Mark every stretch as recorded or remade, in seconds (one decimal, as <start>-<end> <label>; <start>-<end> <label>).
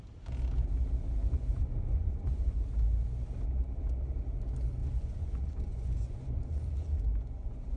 0.0-1.2 recorded; 1.2-2.5 remade; 2.5-4.8 recorded; 4.8-7.8 remade